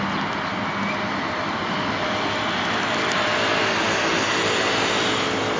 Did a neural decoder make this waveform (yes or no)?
no